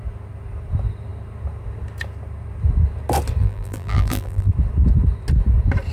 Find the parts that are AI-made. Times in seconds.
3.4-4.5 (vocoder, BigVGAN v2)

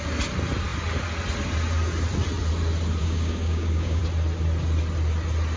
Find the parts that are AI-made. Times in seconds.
3.0-4.0 (codec, DAC)

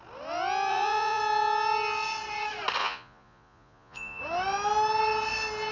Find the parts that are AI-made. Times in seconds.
0.7-1.2 (vocoder, Vocos); 2.8-4.2